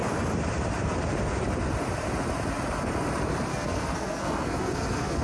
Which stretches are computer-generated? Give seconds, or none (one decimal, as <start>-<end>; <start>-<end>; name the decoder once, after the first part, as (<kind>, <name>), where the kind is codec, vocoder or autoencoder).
3.5-5.2 (codec, SNAC)